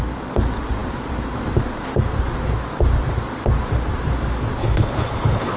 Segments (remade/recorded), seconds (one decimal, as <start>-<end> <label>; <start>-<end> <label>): 0.0-4.6 recorded; 4.6-5.6 remade

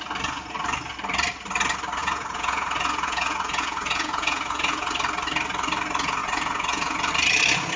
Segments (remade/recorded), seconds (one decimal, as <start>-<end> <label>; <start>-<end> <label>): 0.0-2.0 recorded; 2.0-4.9 remade; 4.9-6.2 recorded; 6.2-7.1 remade; 7.1-7.8 recorded

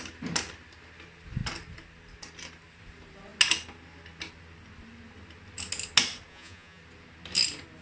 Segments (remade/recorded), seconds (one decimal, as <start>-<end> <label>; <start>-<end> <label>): 0.0-6.3 recorded; 6.3-6.8 remade; 6.8-7.8 recorded

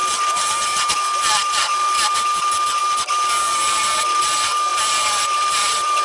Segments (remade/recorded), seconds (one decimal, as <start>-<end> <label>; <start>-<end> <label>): 0.0-2.8 recorded; 2.8-4.2 remade; 4.2-4.7 recorded; 4.7-6.0 remade

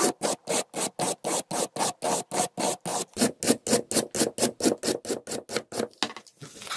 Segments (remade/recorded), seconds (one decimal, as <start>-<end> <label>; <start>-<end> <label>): 0.0-6.8 recorded

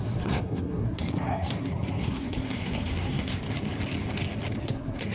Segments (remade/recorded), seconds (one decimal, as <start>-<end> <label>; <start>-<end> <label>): 0.0-3.4 remade; 3.4-4.6 recorded; 4.6-5.1 remade